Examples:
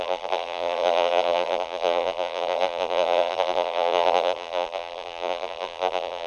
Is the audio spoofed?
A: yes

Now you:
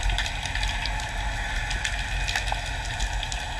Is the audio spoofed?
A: no